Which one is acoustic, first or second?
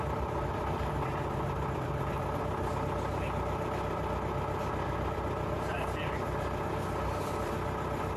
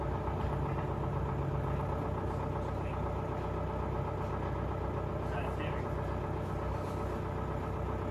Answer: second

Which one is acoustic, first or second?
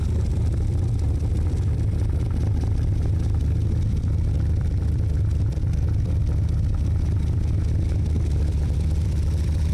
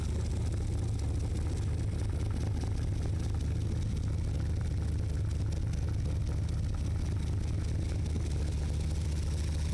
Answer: second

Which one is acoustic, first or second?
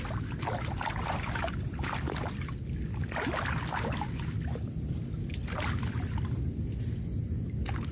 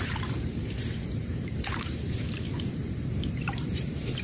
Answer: first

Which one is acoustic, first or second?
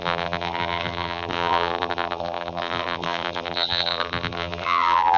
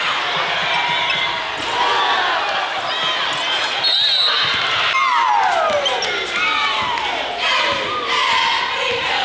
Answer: second